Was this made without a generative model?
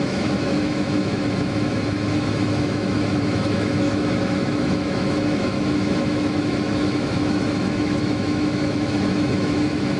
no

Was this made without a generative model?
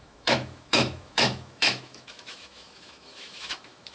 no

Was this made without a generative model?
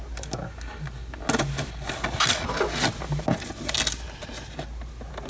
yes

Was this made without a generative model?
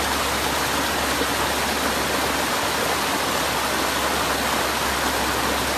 yes